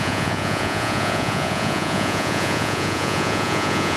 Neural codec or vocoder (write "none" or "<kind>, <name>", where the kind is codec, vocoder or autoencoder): vocoder, Vocos